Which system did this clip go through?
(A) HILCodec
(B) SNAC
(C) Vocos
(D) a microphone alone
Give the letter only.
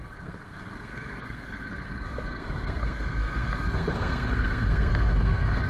B